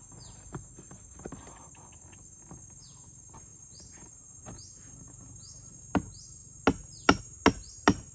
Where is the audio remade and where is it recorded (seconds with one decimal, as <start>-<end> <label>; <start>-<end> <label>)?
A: 0.0-8.1 recorded